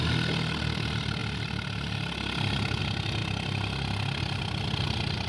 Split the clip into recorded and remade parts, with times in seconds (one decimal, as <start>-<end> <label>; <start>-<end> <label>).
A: 0.0-5.3 recorded

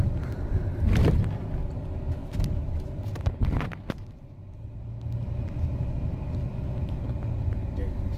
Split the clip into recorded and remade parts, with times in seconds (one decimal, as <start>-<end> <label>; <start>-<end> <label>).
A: 0.0-8.2 recorded

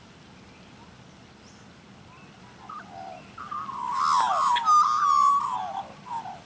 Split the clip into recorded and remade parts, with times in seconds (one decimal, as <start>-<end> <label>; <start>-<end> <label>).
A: 0.0-6.5 recorded

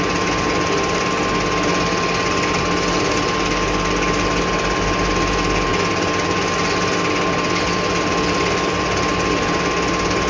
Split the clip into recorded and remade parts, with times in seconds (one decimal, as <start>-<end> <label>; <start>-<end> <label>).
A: 0.0-10.3 recorded

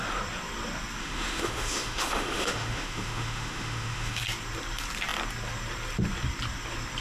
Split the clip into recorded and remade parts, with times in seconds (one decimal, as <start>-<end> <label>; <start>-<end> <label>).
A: 0.0-1.0 recorded; 1.0-4.2 remade; 4.2-7.0 recorded